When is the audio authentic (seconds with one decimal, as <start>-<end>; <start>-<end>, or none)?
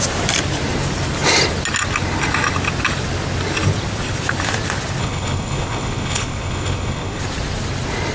0.0-5.0; 7.2-8.1